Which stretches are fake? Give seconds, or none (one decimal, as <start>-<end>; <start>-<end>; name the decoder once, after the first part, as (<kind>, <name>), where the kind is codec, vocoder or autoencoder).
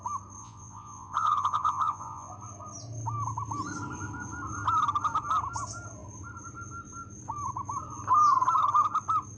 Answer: 0.4-2.3 (vocoder, Vocos)